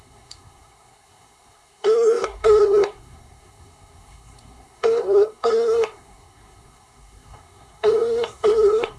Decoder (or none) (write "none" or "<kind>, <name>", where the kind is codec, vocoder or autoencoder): codec, SNAC